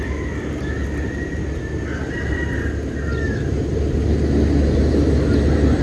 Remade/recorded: recorded